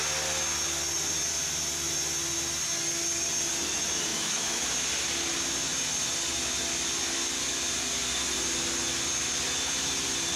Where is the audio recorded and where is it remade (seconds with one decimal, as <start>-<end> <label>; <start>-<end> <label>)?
0.0-4.1 recorded; 4.1-4.6 remade; 4.6-10.4 recorded